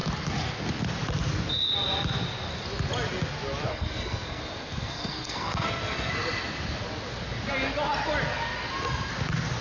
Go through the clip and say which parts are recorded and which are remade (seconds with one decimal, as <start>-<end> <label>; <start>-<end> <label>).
0.0-3.7 recorded; 3.7-6.1 remade; 6.1-9.6 recorded